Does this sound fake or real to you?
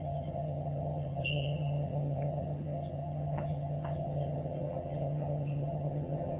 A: fake